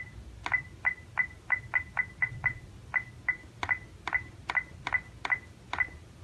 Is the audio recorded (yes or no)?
yes